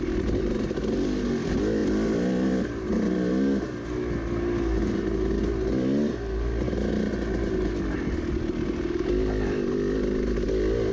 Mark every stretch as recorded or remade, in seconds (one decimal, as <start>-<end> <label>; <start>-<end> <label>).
0.0-10.9 recorded